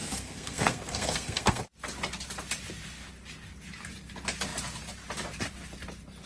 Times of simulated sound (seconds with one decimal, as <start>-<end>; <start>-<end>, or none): 0.0-1.6